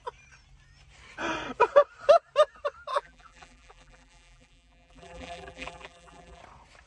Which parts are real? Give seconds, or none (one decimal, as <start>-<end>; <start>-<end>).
0.0-2.9; 6.4-6.9